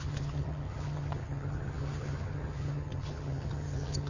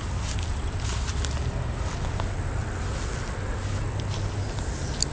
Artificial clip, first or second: first